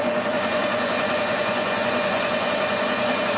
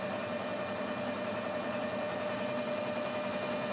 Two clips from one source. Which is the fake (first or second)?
first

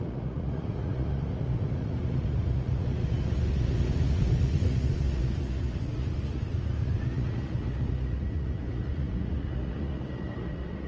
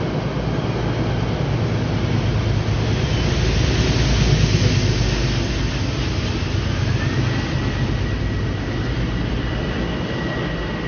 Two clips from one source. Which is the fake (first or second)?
first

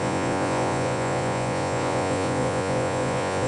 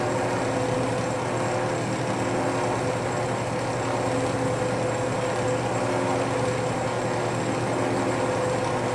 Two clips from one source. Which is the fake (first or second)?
first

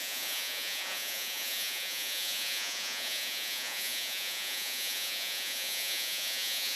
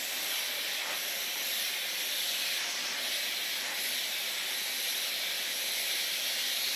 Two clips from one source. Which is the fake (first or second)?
first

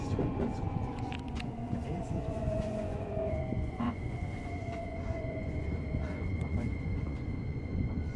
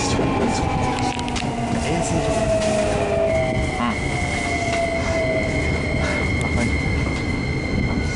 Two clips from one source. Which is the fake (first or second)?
first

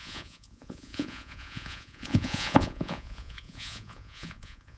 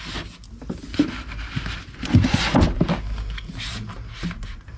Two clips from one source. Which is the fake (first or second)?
first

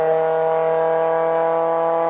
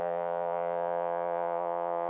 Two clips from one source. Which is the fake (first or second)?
second